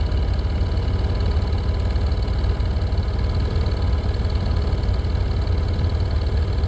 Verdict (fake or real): real